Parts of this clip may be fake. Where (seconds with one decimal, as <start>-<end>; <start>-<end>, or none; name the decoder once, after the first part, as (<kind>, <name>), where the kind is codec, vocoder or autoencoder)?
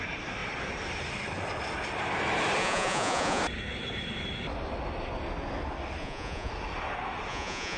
2.6-3.4 (vocoder, Vocos); 6.0-6.5; 7.3-7.8